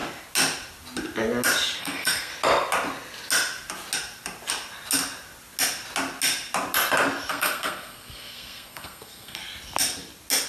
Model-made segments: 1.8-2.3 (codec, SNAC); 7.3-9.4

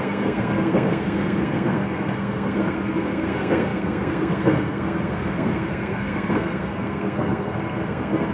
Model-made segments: 0.0-8.3 (codec, SNAC)